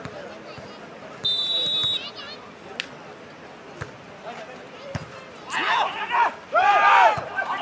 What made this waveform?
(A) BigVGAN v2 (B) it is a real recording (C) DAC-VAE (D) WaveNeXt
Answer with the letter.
B